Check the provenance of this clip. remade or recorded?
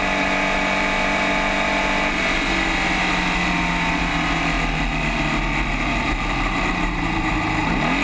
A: recorded